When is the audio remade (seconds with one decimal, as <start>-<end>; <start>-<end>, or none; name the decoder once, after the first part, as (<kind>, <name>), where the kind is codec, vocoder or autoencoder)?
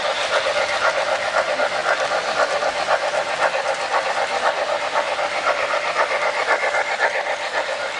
none